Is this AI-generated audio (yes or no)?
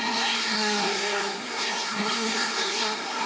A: yes